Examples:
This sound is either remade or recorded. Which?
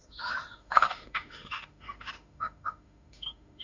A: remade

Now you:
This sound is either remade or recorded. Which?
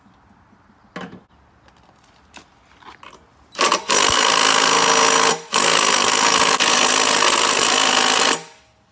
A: recorded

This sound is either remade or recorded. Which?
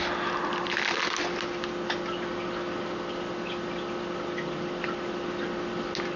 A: recorded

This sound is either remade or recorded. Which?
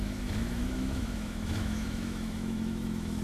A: remade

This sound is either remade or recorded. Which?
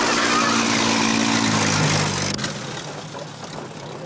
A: recorded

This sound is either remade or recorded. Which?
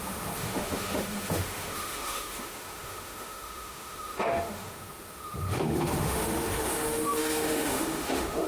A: remade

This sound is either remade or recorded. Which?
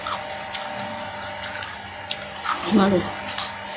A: recorded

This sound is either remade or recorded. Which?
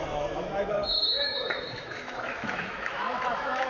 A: remade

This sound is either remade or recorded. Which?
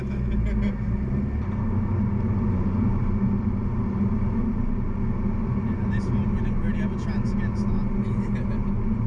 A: recorded